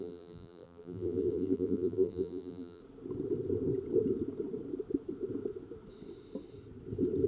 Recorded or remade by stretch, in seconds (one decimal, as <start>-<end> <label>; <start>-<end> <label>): 0.0-2.8 remade; 2.8-7.3 recorded